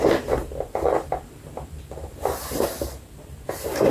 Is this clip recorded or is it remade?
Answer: remade